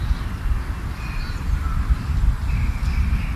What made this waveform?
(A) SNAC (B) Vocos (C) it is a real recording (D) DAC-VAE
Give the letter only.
C